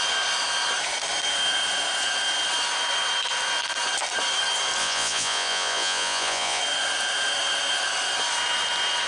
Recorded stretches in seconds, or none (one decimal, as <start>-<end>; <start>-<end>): 0.0-4.8; 6.6-9.1